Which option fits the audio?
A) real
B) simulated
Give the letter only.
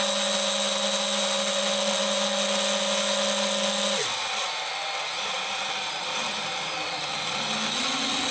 A